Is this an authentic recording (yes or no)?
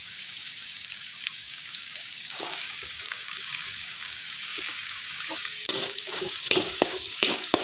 no